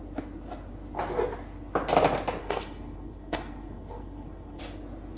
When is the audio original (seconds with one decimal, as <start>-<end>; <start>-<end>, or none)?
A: 0.0-2.4; 4.6-5.2